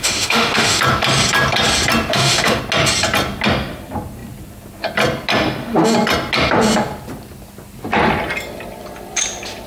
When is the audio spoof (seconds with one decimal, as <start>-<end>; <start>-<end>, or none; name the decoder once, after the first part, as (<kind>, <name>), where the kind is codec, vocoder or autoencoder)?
0.0-0.8 (autoencoder, DAC-VAE); 2.1-2.6